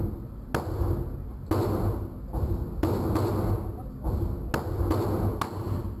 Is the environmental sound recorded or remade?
recorded